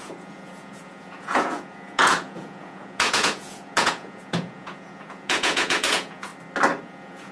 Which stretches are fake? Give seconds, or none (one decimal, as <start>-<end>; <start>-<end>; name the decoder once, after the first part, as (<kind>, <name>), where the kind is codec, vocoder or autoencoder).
0.0-6.3 (vocoder, Vocos); 6.8-7.3